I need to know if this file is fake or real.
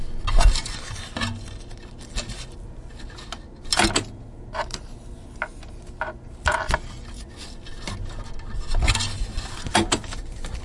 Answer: real